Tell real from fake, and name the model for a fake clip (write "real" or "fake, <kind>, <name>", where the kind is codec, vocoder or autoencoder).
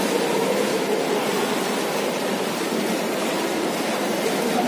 fake, vocoder, BigVGAN v2